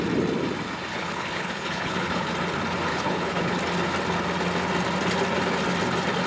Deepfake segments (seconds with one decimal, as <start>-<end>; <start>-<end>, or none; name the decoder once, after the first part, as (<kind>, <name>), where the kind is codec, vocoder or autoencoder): 0.9-2.3 (codec, HILCodec); 2.9-3.6